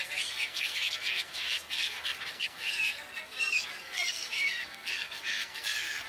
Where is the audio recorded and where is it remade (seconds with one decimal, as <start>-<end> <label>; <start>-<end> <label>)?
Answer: 0.0-6.1 remade